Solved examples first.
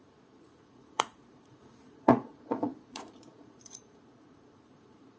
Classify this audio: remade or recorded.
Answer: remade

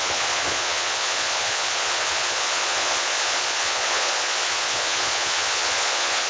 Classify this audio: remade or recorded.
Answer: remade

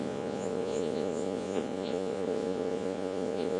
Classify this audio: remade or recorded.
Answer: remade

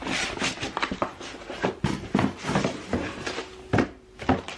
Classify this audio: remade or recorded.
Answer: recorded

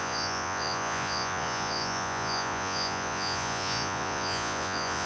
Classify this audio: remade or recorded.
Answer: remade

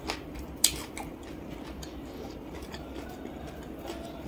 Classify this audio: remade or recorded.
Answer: recorded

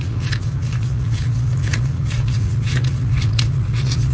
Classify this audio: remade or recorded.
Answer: remade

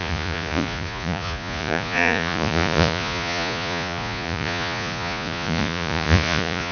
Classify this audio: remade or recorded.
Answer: remade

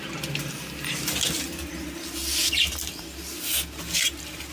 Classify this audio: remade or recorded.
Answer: recorded